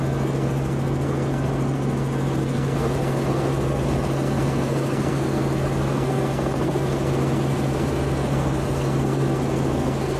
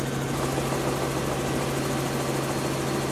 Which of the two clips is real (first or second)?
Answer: second